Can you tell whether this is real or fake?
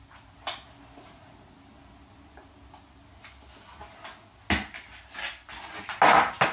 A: real